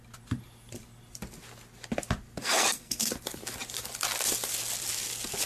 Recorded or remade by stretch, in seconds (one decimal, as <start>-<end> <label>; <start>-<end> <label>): 0.0-2.4 recorded; 2.4-3.1 remade; 3.1-5.5 recorded